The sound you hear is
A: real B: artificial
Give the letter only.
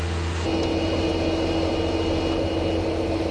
A